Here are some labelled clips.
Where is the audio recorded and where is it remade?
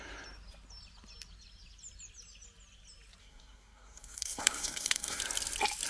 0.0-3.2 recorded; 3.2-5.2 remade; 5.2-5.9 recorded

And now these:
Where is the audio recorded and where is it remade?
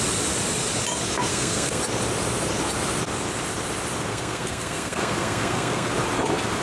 0.0-1.3 recorded; 1.3-1.8 remade; 1.8-4.1 recorded; 4.1-5.9 remade; 5.9-6.6 recorded